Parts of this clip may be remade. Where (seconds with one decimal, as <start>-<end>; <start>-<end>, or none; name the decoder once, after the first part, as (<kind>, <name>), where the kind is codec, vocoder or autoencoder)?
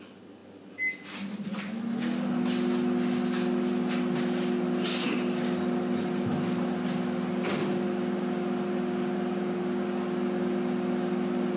none